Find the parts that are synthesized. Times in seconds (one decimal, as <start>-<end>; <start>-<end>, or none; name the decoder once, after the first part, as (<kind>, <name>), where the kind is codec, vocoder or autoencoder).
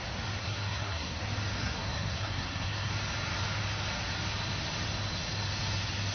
0.4-1.2 (codec, SNAC); 1.6-2.9